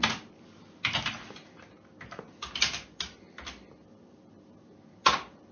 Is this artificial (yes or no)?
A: no